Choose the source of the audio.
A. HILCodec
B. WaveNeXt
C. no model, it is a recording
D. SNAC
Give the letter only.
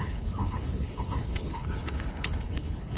A